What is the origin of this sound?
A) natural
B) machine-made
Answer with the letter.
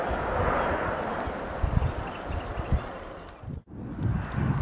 A